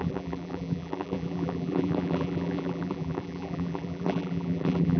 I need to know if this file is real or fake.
fake